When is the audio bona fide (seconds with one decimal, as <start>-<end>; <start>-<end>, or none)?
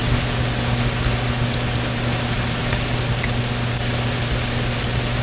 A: 0.0-5.2